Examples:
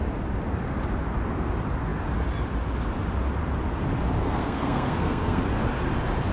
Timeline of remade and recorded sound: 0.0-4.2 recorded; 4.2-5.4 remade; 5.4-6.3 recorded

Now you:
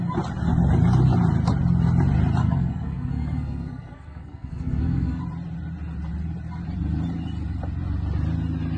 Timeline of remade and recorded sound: 0.0-2.4 recorded; 2.4-5.2 remade; 5.2-8.8 recorded

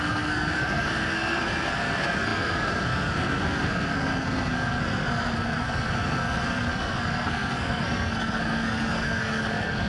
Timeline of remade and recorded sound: 0.0-9.9 remade

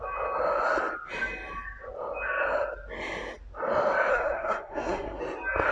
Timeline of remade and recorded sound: 0.0-4.1 recorded; 4.1-5.2 remade; 5.2-5.7 recorded

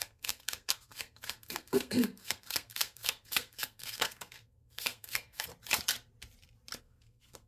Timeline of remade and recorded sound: 0.0-5.5 remade; 5.5-6.8 recorded; 6.8-7.5 remade

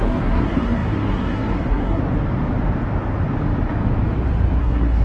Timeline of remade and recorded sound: 0.0-2.0 remade; 2.0-4.6 recorded; 4.6-5.0 remade